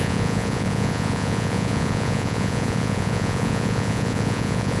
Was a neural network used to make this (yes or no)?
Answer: yes